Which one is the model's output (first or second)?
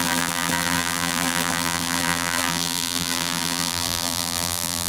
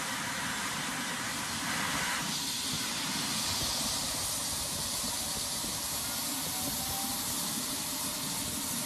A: first